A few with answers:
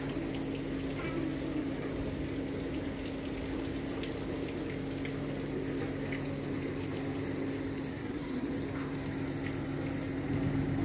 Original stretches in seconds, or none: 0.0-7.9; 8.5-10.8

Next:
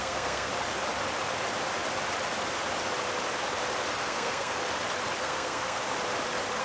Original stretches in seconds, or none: 0.5-3.9; 4.6-5.2; 5.8-6.6

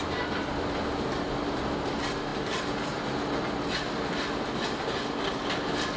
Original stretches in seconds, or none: 0.0-6.0

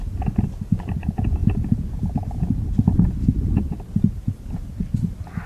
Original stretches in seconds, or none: 0.0-5.5

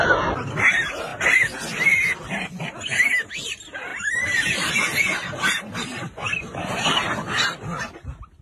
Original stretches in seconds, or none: 0.0-3.9; 4.7-5.9; 6.9-8.4

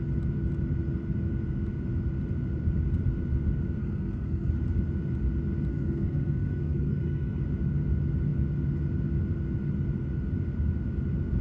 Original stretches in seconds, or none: 0.0-3.8; 4.5-5.7; 7.4-11.4

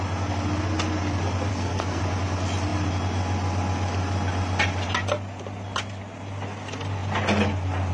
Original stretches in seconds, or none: 0.0-1.5; 2.0-7.9